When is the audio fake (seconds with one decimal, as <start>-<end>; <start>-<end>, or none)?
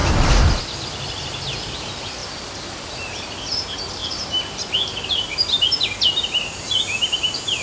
0.0-0.6; 2.2-2.9; 4.0-4.8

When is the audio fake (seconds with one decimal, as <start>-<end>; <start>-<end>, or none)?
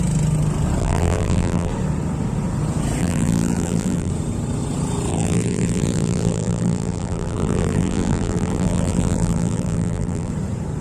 0.8-1.7; 3.0-4.1; 5.1-10.3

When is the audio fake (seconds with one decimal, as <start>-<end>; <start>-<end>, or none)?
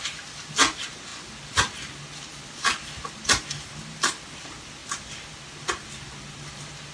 none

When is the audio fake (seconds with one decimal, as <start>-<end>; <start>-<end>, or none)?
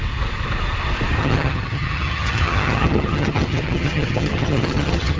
1.2-5.2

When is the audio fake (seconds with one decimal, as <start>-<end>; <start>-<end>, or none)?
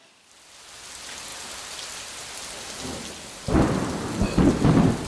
none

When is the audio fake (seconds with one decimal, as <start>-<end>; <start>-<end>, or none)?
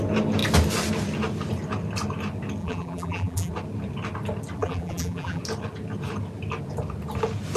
2.6-3.5; 4.6-5.4